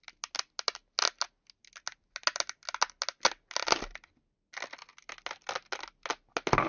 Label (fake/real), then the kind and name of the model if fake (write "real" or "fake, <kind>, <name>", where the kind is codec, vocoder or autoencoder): real